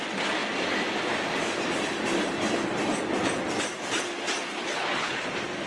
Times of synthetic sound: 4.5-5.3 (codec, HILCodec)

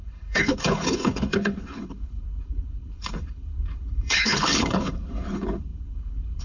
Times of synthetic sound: 0.0-6.4 (codec, HILCodec)

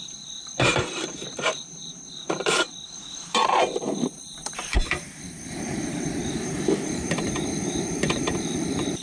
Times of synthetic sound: 0.0-9.0 (vocoder, BigVGAN v2)

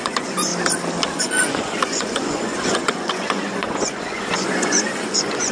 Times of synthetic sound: 0.0-0.5 (vocoder, Vocos); 1.2-5.5

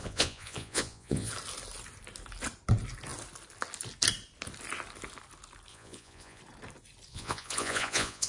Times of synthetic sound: 0.0-1.3 (vocoder, Vocos); 5.7-6.4; 7.1-8.3

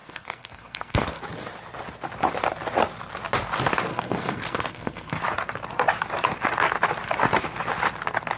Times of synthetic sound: 0.0-1.2 (codec, SNAC); 3.9-5.2

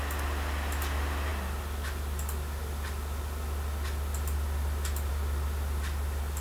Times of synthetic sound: none

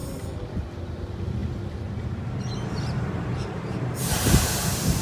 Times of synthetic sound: 0.8-5.0 (vocoder, BigVGAN v2)